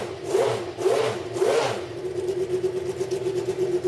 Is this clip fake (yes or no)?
no